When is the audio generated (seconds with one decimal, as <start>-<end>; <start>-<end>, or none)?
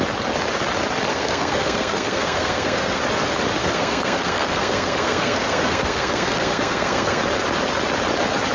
1.1-3.0; 3.6-7.2